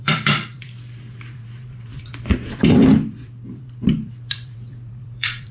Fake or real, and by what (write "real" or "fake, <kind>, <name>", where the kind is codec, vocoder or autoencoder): fake, vocoder, BigVGAN v2